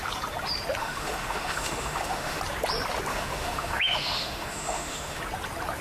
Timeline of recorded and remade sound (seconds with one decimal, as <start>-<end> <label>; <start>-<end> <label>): 0.0-0.8 recorded; 0.8-2.4 remade; 2.4-3.1 recorded; 3.1-5.2 remade; 5.2-5.8 recorded